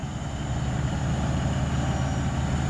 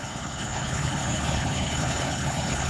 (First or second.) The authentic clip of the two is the first